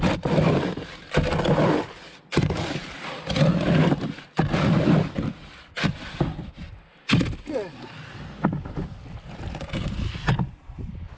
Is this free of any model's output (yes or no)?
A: yes